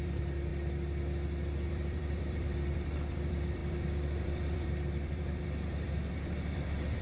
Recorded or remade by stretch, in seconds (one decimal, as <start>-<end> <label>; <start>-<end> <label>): 0.0-0.5 remade; 0.5-1.7 recorded; 1.7-7.0 remade